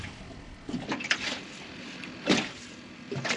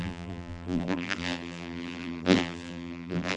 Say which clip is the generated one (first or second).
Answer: second